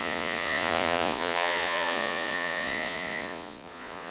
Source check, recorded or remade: remade